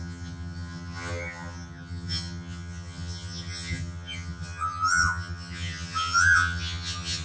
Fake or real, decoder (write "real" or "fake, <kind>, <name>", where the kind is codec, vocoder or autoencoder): fake, vocoder, HiFi-GAN